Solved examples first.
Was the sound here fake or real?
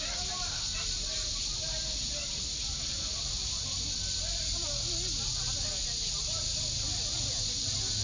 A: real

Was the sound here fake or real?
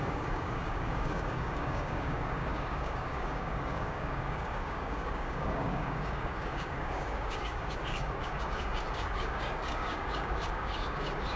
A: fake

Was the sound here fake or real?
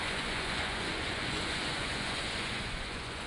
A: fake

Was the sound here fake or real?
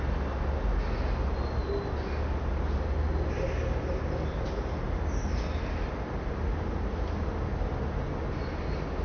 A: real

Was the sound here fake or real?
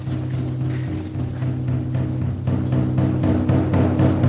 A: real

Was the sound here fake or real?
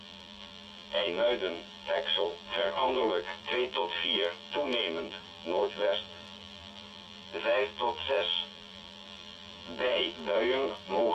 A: fake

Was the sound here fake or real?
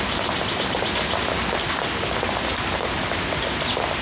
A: real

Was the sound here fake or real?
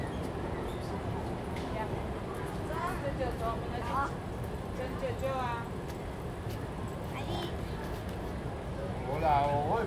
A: real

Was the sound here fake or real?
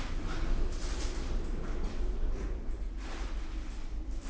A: real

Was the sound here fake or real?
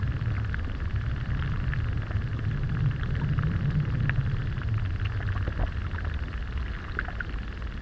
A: real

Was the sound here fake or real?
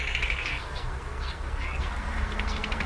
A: fake